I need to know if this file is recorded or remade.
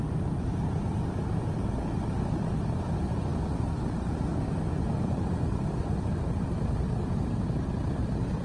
recorded